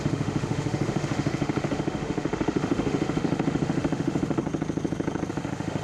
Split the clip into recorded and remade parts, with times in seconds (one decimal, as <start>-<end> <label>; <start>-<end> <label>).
0.0-4.4 remade; 4.4-5.3 recorded; 5.3-5.8 remade